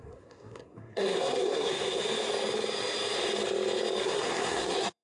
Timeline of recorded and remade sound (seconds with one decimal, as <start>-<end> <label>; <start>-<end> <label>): 0.0-2.0 remade; 2.0-4.0 recorded; 4.0-5.0 remade